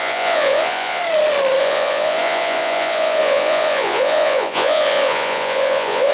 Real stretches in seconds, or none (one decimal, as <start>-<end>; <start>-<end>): 1.0-1.6